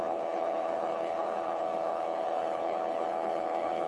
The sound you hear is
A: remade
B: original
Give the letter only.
A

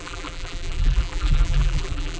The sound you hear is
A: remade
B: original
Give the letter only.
A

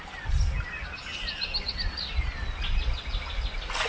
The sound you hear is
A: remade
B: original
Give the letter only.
B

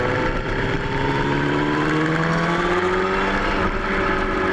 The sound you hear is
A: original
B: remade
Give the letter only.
A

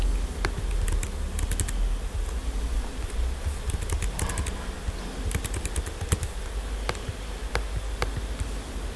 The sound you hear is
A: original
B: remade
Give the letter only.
A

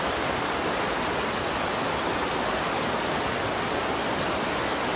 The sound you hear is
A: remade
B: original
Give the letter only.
B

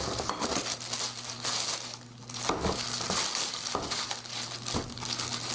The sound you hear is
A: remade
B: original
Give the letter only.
B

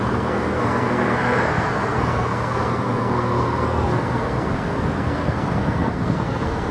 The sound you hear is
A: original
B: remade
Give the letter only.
B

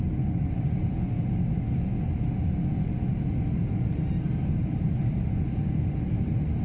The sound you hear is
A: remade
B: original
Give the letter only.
B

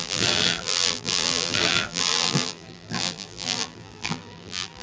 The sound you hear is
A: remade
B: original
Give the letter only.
A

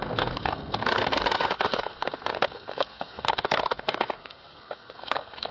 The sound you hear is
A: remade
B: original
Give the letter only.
A